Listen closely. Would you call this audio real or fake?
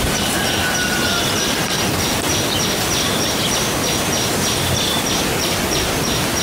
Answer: real